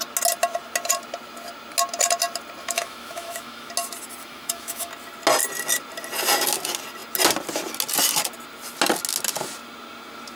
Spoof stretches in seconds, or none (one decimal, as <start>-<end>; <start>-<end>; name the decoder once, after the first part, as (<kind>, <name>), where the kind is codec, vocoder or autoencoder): 2.6-3.7 (autoencoder, DAC-VAE); 4.2-4.9